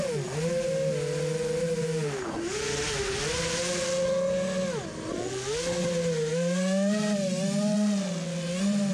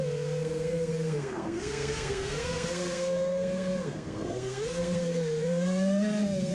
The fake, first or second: second